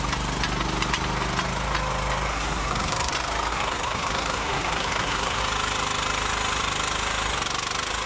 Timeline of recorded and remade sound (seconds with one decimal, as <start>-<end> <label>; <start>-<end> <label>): 0.0-2.3 recorded; 2.3-3.1 remade; 3.1-3.5 recorded; 3.5-5.4 remade; 5.4-8.1 recorded